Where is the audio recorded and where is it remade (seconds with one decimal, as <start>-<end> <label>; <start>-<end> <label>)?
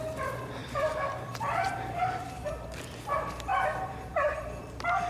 0.0-0.6 recorded; 0.6-2.5 remade; 2.5-3.5 recorded; 3.5-5.1 remade